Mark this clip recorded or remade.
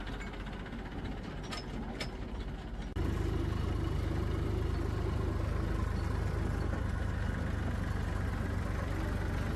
recorded